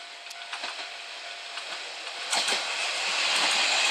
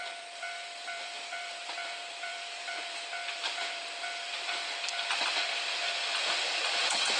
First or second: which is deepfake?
second